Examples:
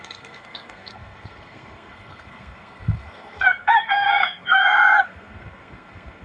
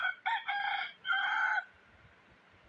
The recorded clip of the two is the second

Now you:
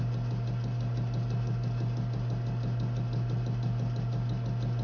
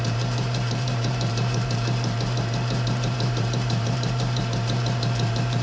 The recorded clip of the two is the first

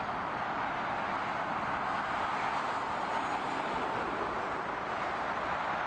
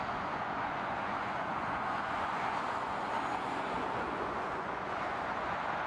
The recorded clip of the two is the first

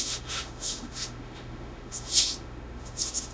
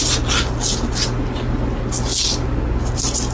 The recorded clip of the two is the second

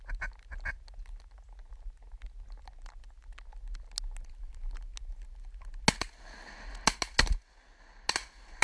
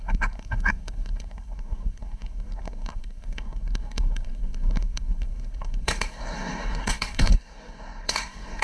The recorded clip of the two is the first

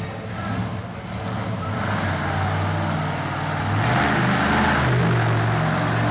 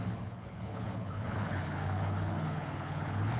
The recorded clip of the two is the first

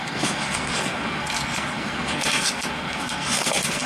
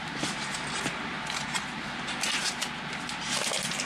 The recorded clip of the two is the second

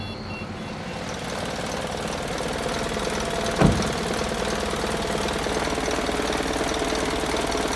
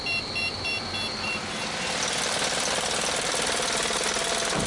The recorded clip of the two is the first